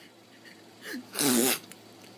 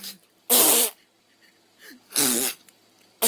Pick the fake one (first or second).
first